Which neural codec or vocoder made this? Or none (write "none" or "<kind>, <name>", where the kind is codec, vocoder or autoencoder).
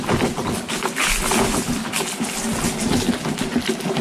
none